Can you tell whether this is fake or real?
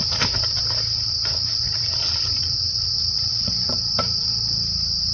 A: real